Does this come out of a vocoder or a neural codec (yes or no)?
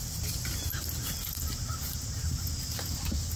no